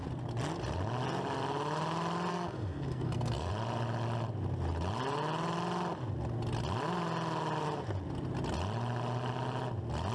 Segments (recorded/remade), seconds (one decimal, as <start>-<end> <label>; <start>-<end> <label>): 0.0-2.3 recorded; 2.3-3.5 remade; 3.5-10.1 recorded